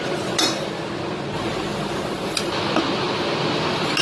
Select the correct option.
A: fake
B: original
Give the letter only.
B